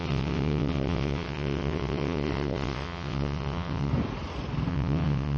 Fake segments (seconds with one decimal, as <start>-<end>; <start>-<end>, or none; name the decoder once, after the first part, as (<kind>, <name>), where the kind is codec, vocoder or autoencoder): 0.0-3.9 (vocoder, WaveNeXt); 4.7-5.4